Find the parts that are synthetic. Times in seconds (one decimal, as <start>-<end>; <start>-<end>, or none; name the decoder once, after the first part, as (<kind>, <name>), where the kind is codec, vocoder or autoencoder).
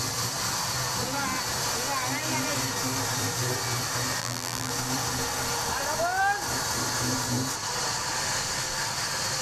4.2-4.7 (vocoder, BigVGAN v2)